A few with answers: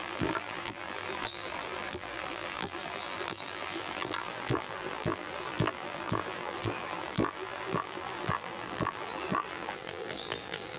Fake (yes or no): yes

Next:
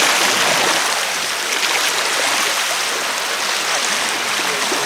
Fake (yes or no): no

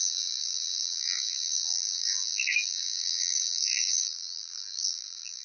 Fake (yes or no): yes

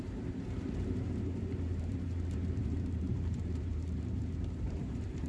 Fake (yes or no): yes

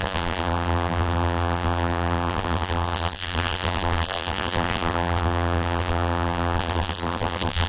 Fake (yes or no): yes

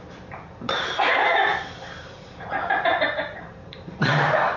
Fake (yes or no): yes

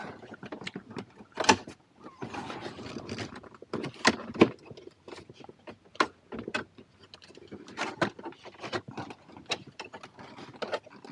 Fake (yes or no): no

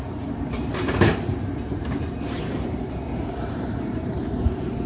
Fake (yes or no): yes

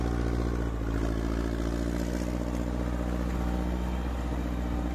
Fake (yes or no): no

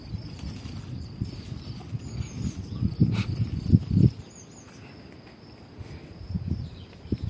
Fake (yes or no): no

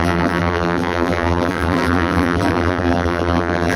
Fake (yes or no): yes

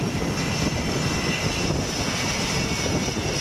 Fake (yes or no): no